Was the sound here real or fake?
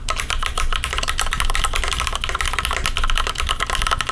real